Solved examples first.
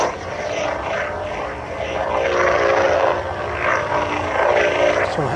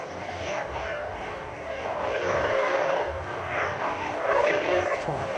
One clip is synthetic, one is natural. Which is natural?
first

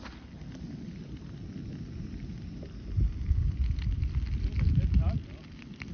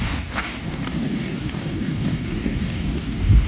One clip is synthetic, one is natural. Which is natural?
first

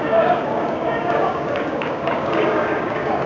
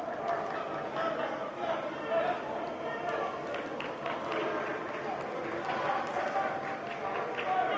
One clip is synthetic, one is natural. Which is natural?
second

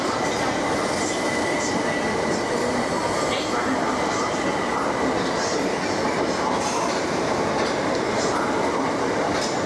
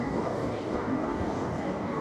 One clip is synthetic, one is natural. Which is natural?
first